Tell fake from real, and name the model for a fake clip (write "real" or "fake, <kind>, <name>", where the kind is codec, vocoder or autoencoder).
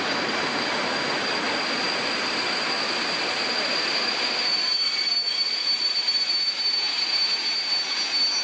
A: real